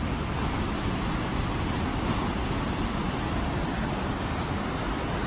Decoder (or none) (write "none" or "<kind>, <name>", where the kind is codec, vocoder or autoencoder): none